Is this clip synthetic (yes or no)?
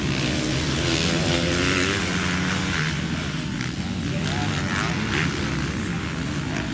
no